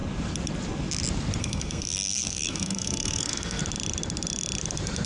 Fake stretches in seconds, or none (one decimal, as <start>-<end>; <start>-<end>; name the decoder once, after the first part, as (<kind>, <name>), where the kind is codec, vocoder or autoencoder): 1.4-3.6 (codec, SNAC)